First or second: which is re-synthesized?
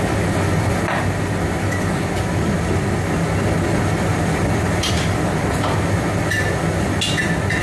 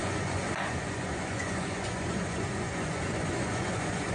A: second